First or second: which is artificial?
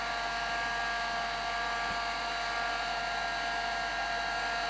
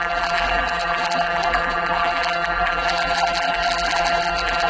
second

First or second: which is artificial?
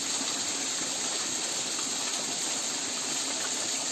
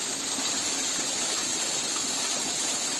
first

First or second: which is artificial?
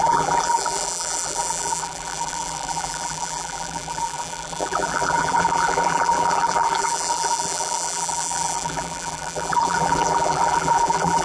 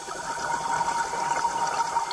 first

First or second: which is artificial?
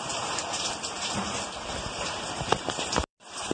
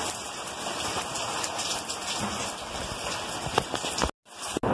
first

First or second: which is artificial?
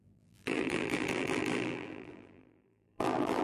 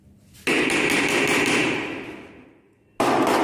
first